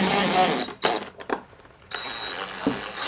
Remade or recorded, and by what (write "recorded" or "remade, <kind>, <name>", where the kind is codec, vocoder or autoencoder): recorded